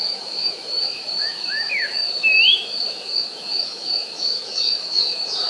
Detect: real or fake fake